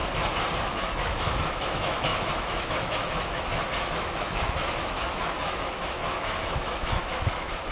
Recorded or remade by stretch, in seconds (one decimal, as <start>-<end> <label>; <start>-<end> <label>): 0.0-0.6 recorded; 0.6-7.7 remade